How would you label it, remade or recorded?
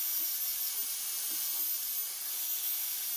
recorded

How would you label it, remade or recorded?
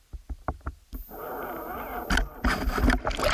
recorded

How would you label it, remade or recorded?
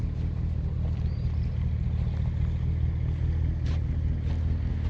recorded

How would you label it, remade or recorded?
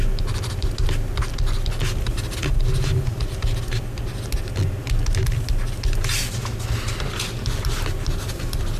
recorded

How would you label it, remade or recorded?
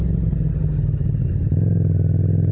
recorded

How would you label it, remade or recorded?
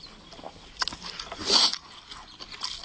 recorded